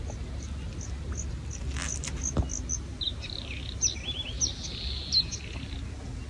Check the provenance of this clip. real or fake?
real